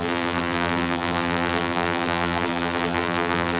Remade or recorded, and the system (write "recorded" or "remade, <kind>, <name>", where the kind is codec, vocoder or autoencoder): remade, vocoder, BigVGAN v2